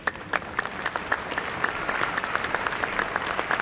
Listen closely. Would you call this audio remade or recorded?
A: recorded